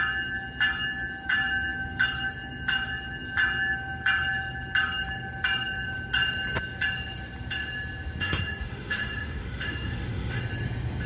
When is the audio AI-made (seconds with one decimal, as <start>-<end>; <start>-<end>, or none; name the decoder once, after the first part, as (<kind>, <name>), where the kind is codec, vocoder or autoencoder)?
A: 8.2-10.4 (autoencoder, DAC-VAE)